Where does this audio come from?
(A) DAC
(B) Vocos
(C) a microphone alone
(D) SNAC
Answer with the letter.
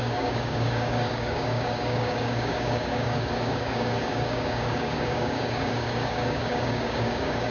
A